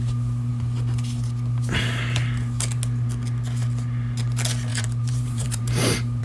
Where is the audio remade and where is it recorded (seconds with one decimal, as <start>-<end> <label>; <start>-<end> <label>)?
0.0-4.7 recorded; 4.7-6.2 remade